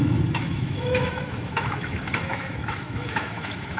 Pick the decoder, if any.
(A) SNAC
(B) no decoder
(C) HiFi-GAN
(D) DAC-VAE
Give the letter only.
D